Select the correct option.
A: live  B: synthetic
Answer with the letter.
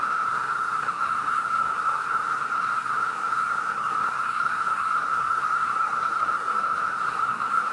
B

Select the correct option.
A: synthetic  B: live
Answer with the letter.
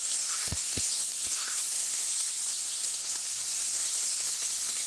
A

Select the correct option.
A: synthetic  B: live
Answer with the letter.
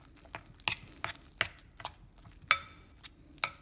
B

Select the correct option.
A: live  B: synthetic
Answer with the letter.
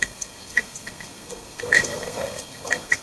B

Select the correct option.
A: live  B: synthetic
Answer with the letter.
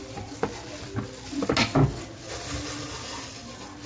A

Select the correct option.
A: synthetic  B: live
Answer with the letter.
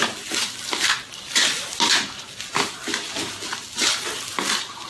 B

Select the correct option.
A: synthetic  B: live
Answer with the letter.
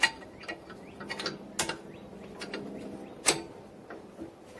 B